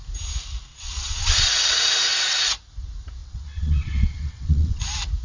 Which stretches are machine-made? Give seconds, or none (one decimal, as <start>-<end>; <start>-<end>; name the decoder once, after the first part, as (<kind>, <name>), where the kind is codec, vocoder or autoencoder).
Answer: 0.7-1.8 (vocoder, WaveNeXt); 3.2-4.8

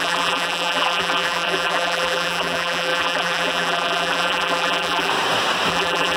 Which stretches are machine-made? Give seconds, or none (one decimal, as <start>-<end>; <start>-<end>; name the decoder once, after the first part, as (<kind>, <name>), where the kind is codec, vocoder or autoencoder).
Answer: 0.0-5.1 (vocoder, BigVGAN v2); 5.7-6.2